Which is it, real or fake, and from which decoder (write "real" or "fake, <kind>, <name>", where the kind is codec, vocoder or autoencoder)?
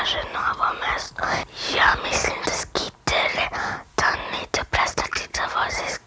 real